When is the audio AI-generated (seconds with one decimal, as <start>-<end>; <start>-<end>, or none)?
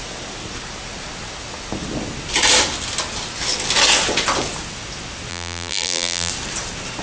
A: 5.3-6.3